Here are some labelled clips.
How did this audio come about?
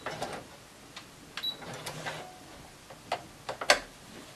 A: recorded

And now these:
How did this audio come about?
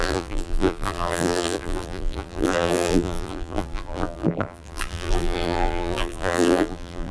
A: remade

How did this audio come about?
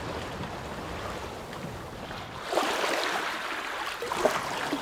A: recorded